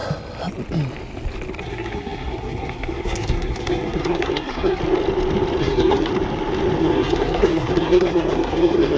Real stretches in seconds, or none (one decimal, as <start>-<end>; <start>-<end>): 0.0-1.6; 4.8-5.6; 6.1-6.8